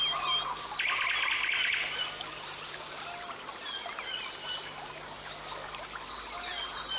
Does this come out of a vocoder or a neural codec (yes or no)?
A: no